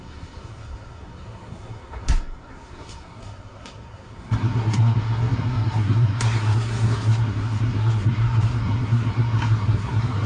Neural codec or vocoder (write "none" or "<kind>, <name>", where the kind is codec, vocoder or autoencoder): codec, SNAC